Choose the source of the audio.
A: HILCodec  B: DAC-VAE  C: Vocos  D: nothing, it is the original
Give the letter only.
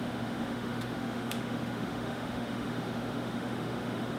B